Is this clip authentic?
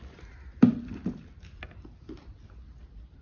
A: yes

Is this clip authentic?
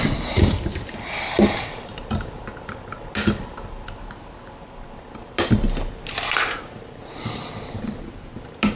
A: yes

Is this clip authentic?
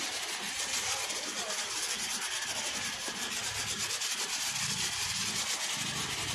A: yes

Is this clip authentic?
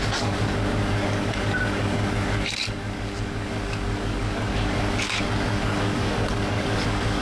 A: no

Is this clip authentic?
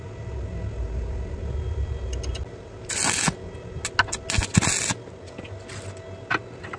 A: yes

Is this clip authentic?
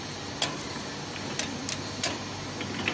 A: yes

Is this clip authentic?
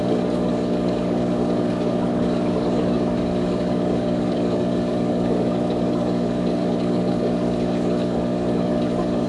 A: no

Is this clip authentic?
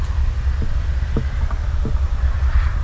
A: yes